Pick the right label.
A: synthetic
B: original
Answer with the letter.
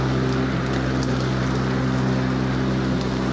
B